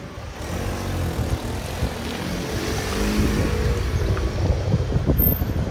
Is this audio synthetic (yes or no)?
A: no